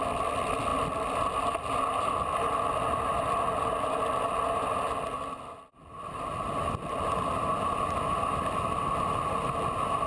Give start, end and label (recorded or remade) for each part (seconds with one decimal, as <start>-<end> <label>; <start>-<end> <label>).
0.0-10.1 recorded